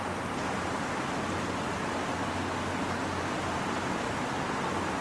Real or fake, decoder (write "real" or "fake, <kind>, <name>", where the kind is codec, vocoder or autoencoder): real